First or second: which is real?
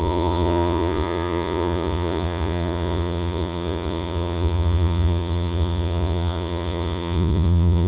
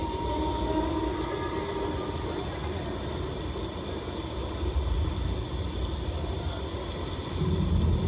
second